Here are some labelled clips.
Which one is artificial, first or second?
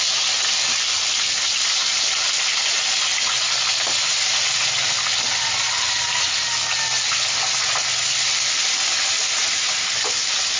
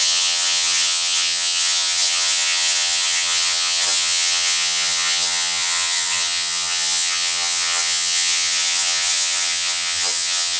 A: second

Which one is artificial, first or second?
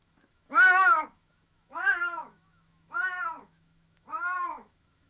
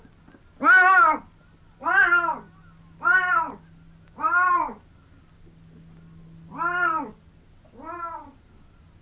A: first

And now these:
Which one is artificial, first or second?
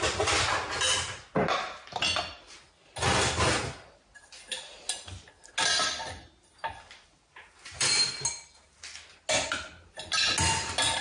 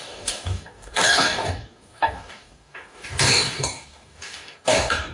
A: second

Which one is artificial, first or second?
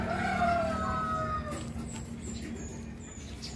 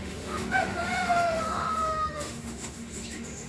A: second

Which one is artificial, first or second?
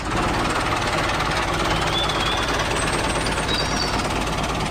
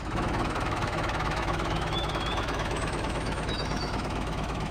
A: second